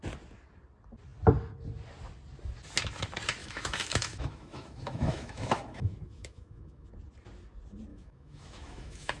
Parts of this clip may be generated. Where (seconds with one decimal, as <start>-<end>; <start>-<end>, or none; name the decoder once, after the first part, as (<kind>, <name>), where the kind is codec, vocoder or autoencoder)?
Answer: 3.4-6.9 (autoencoder, DAC-VAE); 7.9-9.2